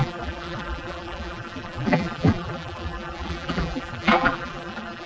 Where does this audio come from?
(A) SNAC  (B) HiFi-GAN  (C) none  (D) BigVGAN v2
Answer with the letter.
D